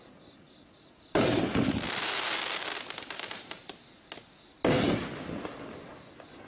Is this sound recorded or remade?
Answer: recorded